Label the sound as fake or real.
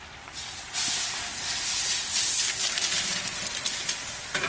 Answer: real